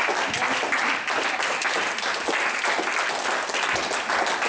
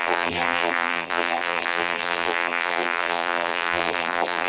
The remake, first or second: second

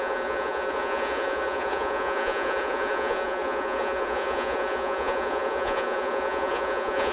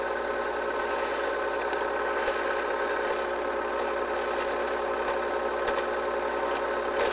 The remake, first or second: first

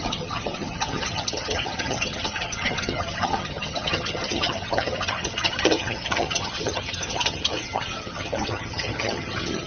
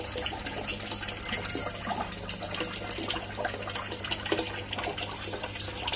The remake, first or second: first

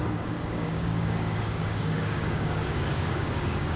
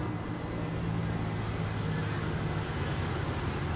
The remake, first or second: first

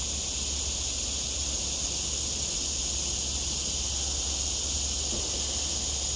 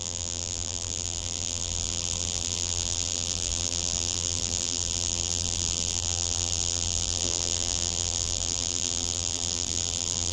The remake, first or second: second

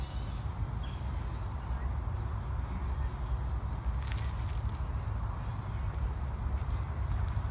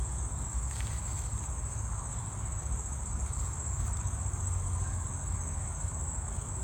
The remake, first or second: second